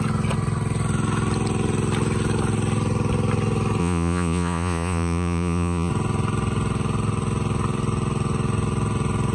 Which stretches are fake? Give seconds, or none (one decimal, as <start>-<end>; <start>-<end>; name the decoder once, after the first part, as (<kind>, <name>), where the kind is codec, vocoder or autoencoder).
3.8-5.9 (vocoder, Vocos)